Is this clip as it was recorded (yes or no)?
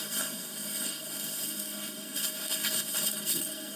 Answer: no